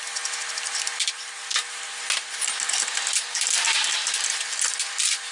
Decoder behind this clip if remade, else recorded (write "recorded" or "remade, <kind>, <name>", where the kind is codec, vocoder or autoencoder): recorded